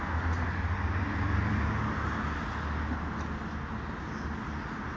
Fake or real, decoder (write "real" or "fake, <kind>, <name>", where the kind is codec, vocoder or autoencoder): real